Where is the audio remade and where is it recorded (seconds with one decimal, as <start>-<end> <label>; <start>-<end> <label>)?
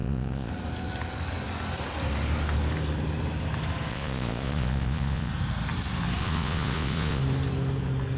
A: 0.0-0.5 remade; 0.5-3.9 recorded; 3.9-5.3 remade; 5.3-6.2 recorded; 6.2-7.2 remade; 7.2-8.2 recorded